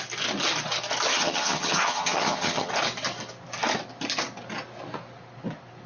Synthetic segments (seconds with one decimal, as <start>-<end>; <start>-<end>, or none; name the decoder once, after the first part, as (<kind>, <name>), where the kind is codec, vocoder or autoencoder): 1.1-2.7 (vocoder, HiFi-GAN)